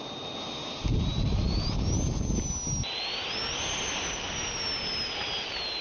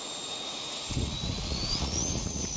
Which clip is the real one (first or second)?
first